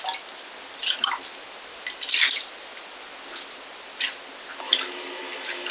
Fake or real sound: real